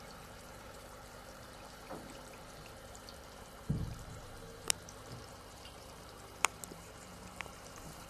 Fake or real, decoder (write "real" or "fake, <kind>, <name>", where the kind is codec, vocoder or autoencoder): fake, vocoder, BigVGAN v2